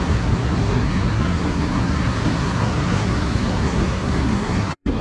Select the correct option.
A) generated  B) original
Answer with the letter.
A